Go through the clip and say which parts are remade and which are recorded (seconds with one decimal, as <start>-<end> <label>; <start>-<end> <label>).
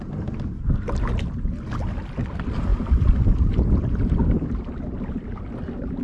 0.0-6.0 recorded